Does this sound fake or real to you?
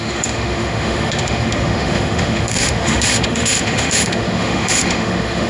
fake